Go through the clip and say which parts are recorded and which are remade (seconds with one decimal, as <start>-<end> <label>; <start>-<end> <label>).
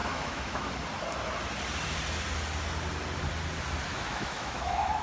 0.0-0.7 remade; 0.7-3.9 recorded; 3.9-5.0 remade